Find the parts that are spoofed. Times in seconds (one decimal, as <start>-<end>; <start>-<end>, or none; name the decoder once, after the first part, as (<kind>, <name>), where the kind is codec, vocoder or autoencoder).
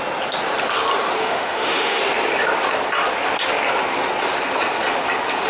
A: 1.1-2.0 (autoencoder, DAC-VAE)